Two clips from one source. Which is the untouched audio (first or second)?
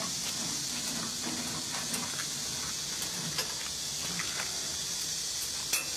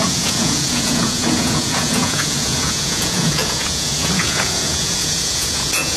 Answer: first